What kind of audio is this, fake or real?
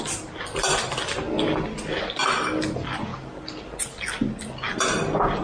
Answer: real